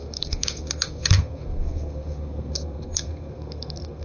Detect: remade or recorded remade